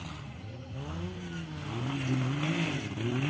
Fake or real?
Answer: real